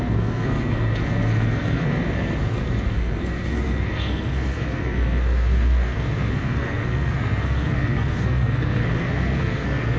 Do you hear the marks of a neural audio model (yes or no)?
yes